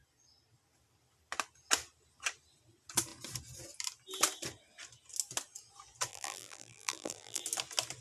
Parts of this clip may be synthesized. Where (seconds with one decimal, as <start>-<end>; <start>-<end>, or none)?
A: 6.1-7.4